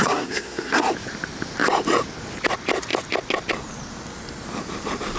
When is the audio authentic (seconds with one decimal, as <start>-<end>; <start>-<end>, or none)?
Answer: 0.9-5.2